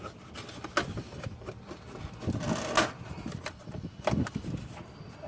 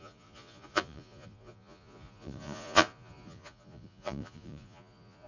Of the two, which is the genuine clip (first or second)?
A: first